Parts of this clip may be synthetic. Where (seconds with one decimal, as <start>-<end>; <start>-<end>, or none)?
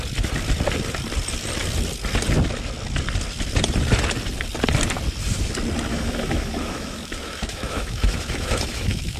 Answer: 5.9-9.2